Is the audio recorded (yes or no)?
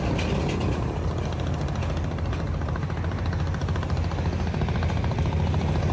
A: yes